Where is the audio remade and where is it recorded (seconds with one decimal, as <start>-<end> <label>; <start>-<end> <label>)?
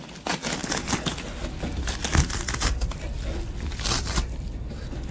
0.0-5.1 recorded